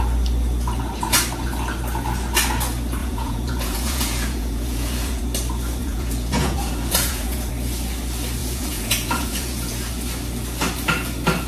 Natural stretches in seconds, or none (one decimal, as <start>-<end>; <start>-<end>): 0.0-3.0; 5.2-5.8; 7.5-8.4; 9.9-11.5